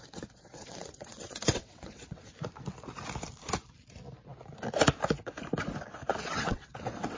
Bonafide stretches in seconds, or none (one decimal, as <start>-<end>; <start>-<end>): 2.3-6.1